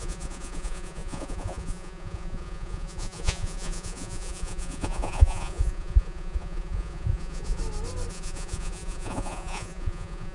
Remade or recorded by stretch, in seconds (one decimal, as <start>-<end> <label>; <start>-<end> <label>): 0.0-7.6 remade; 7.6-8.1 recorded; 8.1-10.3 remade